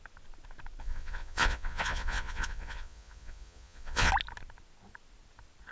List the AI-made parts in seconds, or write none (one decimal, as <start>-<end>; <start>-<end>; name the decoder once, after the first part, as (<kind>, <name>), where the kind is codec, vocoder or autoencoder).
0.8-4.1 (vocoder, Vocos)